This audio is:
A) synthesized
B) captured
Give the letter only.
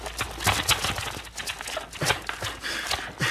B